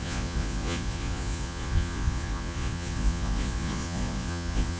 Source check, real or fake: fake